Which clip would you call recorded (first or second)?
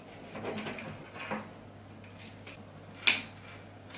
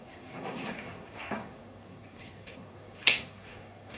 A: first